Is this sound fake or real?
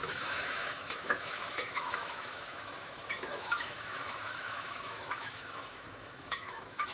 fake